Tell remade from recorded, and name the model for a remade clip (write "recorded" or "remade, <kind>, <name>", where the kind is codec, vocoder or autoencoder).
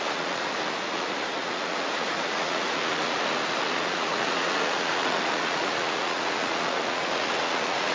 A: remade, vocoder, Vocos